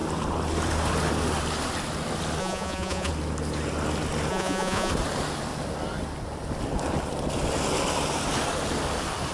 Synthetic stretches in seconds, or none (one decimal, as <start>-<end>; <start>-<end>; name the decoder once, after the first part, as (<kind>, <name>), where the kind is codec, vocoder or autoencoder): 2.4-3.1 (vocoder, Vocos); 4.3-4.9